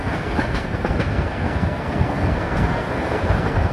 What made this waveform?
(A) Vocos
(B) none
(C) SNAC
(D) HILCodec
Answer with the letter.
C